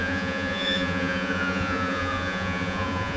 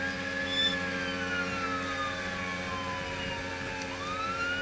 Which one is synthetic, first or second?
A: first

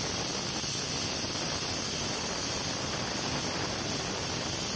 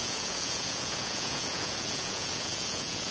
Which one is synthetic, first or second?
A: second